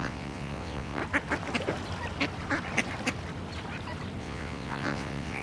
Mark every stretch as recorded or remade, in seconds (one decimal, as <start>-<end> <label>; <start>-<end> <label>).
0.0-1.0 remade; 1.0-4.2 recorded; 4.2-5.4 remade